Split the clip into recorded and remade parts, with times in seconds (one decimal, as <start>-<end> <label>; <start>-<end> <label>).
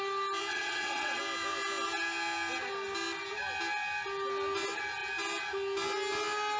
0.0-0.5 recorded; 0.5-1.2 remade; 1.2-6.6 recorded